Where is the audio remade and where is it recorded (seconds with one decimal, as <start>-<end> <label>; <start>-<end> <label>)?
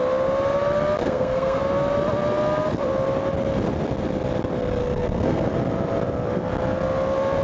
0.0-1.0 recorded; 1.0-1.6 remade; 1.6-4.8 recorded; 4.8-5.5 remade; 5.5-7.4 recorded